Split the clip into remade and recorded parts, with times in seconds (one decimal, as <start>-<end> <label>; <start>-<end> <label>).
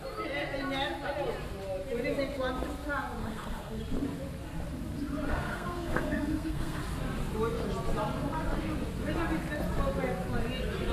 0.0-3.2 recorded; 3.2-3.8 remade; 3.8-5.3 recorded; 5.3-6.8 remade; 6.8-10.9 recorded